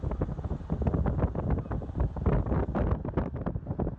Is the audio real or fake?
real